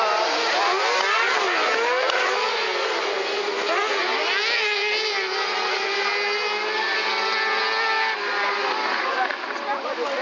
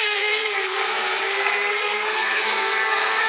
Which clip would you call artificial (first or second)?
second